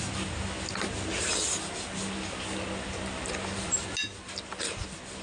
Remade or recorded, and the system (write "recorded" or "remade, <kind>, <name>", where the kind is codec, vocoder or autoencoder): recorded